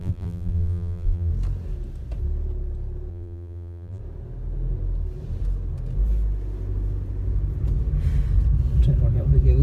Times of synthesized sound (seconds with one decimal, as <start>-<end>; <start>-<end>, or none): 0.0-1.3; 3.1-4.0